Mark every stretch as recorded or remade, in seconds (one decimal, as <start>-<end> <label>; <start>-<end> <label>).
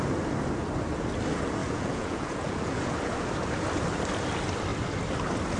0.0-1.6 recorded; 1.6-3.1 remade; 3.1-5.6 recorded